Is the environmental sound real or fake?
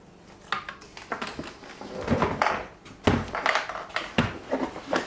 real